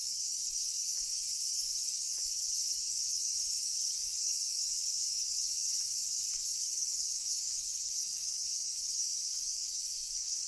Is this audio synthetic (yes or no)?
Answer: yes